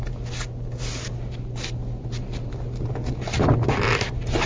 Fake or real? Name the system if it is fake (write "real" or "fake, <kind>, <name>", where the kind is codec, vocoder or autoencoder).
real